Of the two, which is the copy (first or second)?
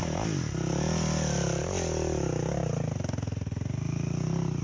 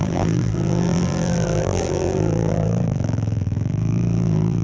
second